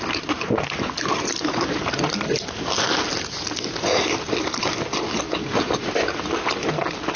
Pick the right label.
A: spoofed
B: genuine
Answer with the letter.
B